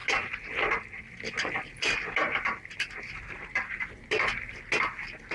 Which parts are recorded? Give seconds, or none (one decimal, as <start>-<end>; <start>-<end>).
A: 0.0-5.3